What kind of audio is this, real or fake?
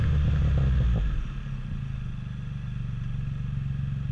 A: real